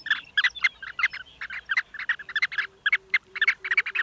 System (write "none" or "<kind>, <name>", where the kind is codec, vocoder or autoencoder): vocoder, BigVGAN v2